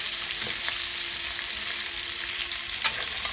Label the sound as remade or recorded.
recorded